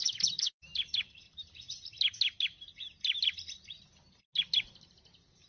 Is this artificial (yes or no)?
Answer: no